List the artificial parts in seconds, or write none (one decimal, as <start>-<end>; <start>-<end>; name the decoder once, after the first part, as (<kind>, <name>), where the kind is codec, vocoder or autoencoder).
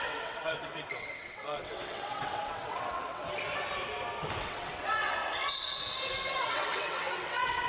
0.0-3.2 (vocoder, WaveNeXt); 4.4-5.2; 6.3-7.7